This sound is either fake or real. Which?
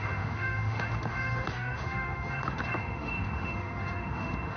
fake